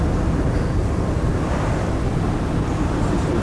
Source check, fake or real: real